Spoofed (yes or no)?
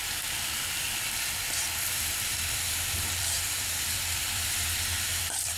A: yes